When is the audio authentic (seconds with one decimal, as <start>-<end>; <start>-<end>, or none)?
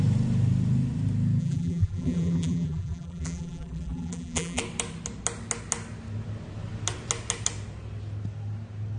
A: 0.0-1.4; 4.6-9.0